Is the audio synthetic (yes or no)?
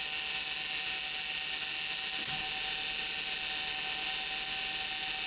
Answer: no